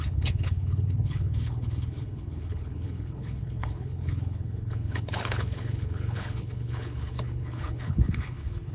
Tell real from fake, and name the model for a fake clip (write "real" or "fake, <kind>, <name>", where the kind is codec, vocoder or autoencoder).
fake, codec, HILCodec